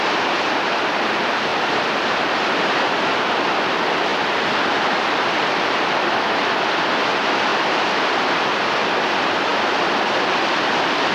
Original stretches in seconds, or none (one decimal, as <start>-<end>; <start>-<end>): none